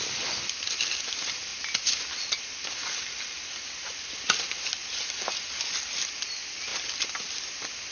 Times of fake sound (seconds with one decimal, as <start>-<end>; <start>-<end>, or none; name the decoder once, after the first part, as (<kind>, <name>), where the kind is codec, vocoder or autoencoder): none